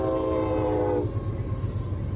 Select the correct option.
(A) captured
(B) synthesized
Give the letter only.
A